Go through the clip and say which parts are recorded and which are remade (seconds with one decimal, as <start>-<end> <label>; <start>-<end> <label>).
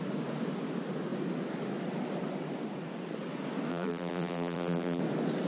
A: 0.0-3.7 recorded; 3.7-5.0 remade; 5.0-5.5 recorded